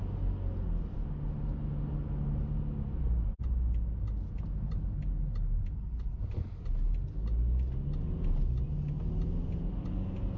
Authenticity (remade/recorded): recorded